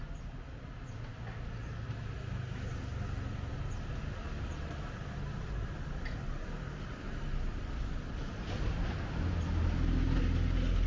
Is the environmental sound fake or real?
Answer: real